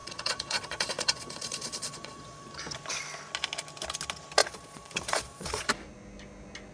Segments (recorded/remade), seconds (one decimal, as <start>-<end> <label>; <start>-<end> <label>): 0.0-2.5 remade; 2.5-4.4 recorded; 4.4-5.7 remade; 5.7-6.7 recorded